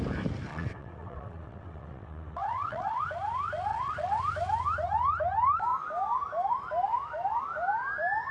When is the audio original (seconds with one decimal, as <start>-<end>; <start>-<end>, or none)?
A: 0.0-0.5; 3.0-3.7; 4.2-8.3